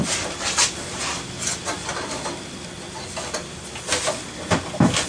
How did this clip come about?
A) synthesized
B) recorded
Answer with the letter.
B